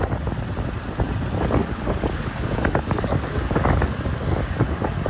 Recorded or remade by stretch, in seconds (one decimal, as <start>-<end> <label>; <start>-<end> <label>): 0.0-1.6 recorded; 1.6-5.1 remade